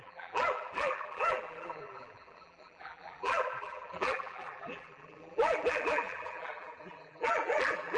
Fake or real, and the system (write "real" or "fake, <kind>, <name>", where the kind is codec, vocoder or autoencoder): fake, vocoder, BigVGAN v2